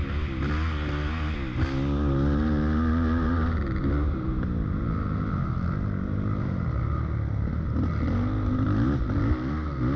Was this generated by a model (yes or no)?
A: no